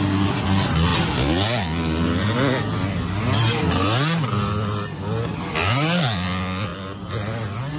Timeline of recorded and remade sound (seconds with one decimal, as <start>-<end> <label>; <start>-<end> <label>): 0.0-7.8 recorded